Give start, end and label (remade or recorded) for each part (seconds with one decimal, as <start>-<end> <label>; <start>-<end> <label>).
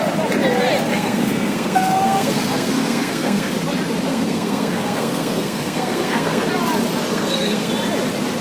0.0-0.9 recorded; 0.9-3.5 remade; 3.5-4.1 recorded; 4.1-6.5 remade; 6.5-7.1 recorded; 7.1-7.7 remade; 7.7-8.4 recorded